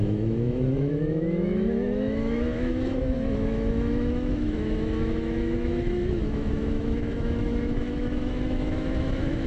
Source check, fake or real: fake